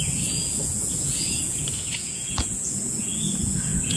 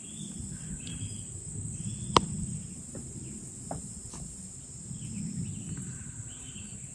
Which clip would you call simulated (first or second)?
first